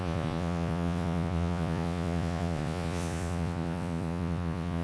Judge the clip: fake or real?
fake